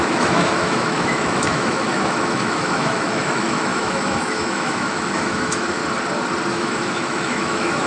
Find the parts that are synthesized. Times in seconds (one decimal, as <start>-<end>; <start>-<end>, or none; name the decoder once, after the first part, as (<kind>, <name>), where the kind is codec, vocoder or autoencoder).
0.0-5.8 (autoencoder, DAC-VAE); 6.5-7.9